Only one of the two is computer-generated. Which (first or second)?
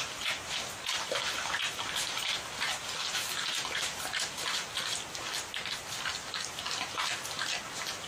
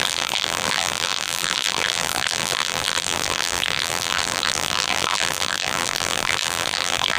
second